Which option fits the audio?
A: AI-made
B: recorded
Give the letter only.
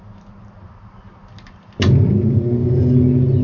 B